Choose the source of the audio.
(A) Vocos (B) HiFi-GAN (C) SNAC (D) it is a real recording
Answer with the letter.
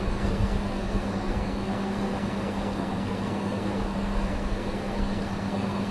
C